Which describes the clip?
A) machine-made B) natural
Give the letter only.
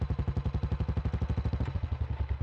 B